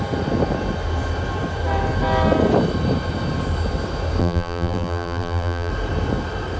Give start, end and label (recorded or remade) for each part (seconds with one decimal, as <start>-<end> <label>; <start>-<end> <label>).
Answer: 0.0-4.2 recorded; 4.2-5.7 remade; 5.7-6.6 recorded